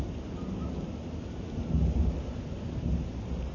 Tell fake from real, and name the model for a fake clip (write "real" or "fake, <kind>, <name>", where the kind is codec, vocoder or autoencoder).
real